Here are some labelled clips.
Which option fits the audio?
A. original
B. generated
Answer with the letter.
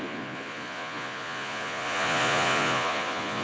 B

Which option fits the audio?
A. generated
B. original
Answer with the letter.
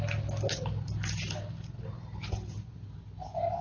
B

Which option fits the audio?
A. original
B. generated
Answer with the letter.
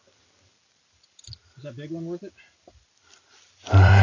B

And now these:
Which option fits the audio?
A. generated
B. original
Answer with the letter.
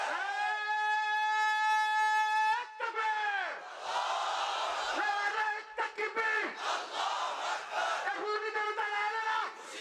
B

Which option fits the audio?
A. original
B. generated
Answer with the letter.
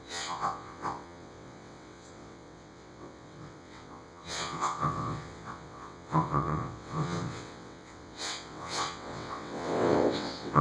B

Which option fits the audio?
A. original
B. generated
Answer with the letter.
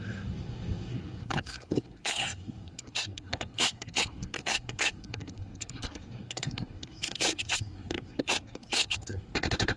B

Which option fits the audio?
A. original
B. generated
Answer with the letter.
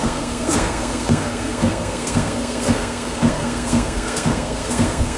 B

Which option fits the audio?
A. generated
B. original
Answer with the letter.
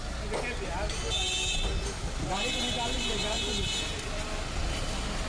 B